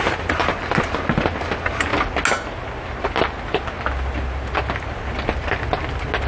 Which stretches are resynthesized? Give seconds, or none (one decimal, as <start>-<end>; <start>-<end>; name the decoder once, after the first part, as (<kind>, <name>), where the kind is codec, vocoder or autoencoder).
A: none